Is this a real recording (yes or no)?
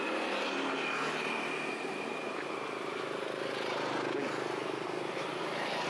yes